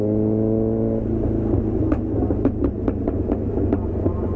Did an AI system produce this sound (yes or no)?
no